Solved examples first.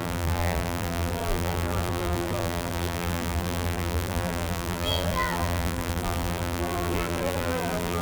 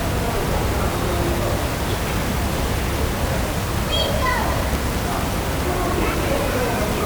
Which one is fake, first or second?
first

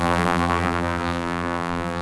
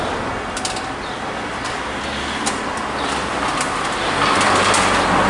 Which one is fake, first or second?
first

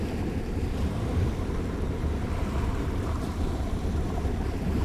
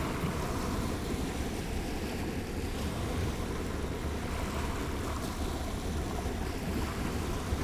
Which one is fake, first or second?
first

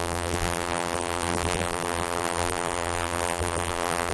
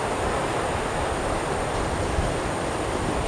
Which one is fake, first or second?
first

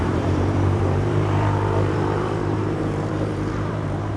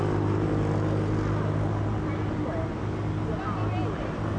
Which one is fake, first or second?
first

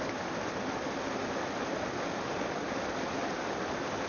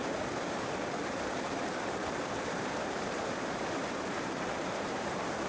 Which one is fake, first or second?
second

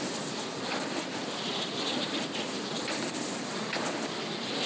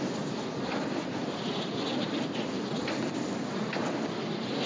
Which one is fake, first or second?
first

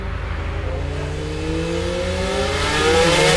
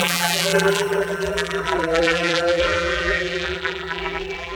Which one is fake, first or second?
second